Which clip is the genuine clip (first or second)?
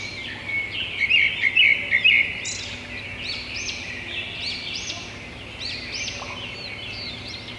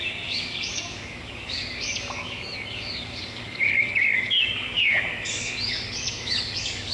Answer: first